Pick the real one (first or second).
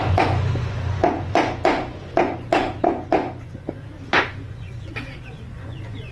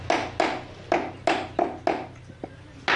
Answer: second